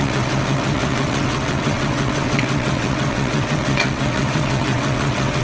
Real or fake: fake